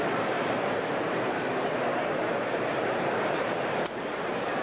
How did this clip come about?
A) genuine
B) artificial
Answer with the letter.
B